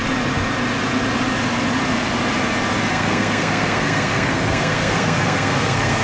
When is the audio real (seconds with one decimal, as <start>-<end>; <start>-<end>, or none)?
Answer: 0.0-2.9